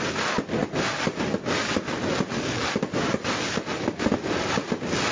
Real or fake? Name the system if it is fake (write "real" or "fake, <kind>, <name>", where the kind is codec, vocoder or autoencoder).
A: real